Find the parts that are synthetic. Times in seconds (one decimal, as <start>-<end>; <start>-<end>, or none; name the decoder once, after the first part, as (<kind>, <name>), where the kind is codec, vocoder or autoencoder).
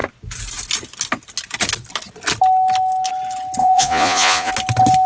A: 3.6-4.5 (vocoder, Vocos)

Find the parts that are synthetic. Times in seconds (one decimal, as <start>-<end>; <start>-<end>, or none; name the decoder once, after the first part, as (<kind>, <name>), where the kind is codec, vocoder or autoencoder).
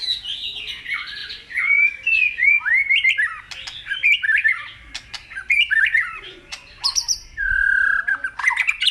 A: 1.2-2.6 (vocoder, Vocos); 5.9-7.0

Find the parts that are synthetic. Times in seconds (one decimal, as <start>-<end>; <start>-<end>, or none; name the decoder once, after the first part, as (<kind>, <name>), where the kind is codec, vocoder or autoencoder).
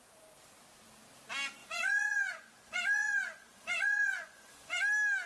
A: 1.6-4.8 (vocoder, Vocos)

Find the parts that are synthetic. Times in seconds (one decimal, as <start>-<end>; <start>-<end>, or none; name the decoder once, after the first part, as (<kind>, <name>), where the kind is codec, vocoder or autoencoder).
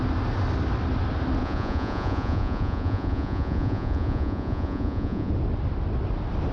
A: 1.4-5.3 (vocoder, Vocos)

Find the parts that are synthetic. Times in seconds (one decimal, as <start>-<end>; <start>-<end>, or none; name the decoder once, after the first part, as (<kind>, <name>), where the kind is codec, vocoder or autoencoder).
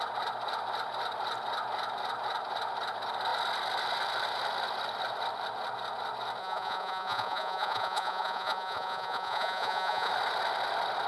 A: 6.4-10.1 (vocoder, Vocos)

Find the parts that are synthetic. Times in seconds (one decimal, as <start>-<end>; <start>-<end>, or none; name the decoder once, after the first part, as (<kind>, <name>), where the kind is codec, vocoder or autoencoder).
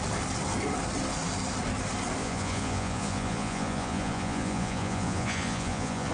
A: 2.2-6.1 (vocoder, Vocos)